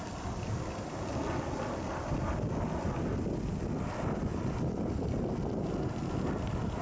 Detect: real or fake real